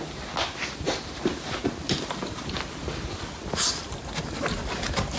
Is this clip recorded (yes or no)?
yes